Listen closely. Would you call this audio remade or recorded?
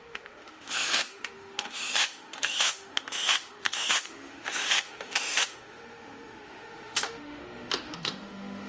remade